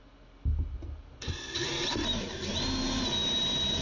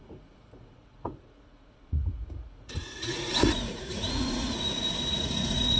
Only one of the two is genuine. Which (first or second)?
first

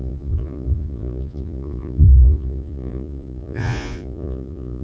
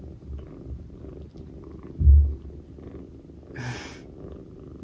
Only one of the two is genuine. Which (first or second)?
second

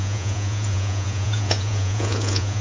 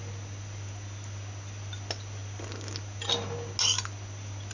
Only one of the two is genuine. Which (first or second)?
second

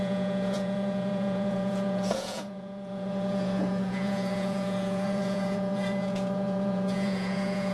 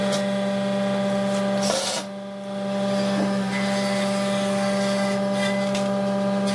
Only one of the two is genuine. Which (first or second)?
second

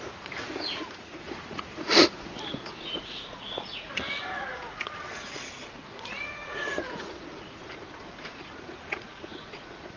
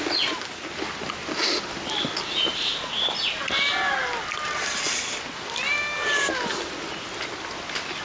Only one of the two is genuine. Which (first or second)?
second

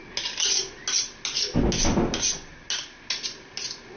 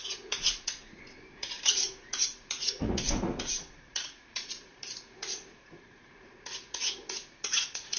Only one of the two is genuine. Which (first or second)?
first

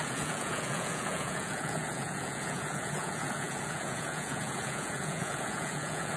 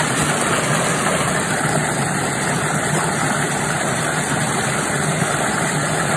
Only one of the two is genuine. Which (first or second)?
second